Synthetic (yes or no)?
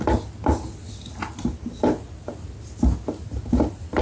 no